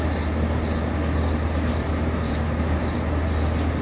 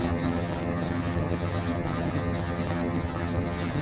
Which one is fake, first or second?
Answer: second